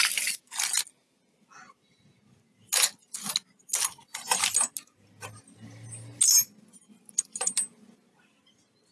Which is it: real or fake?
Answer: real